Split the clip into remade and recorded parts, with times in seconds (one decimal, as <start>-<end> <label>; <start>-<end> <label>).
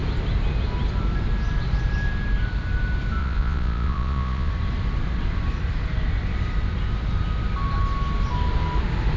0.0-3.2 recorded; 3.2-4.5 remade; 4.5-9.2 recorded